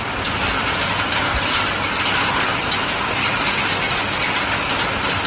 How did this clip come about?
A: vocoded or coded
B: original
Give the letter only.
B